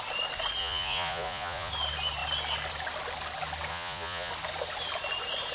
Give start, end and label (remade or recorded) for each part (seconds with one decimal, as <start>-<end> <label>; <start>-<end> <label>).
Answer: 0.0-0.6 recorded; 0.6-1.7 remade; 1.7-3.7 recorded; 3.7-4.3 remade; 4.3-5.5 recorded